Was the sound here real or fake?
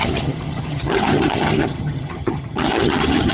fake